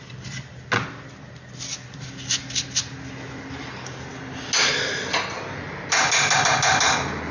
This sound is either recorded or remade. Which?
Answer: recorded